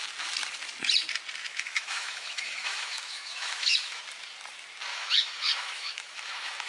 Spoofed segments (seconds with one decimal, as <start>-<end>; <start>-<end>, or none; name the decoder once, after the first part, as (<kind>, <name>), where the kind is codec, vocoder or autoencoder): 1.5-4.0 (autoencoder, DAC-VAE); 4.9-6.7